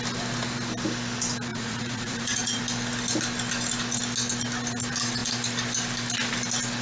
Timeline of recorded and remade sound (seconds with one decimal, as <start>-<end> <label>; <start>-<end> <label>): 0.0-1.5 recorded; 1.5-2.6 remade; 2.6-6.8 recorded